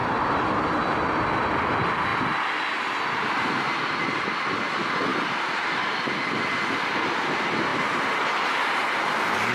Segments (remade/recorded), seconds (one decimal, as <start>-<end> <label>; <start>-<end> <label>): 0.0-0.6 remade; 0.6-5.1 recorded; 5.1-5.8 remade; 5.8-9.5 recorded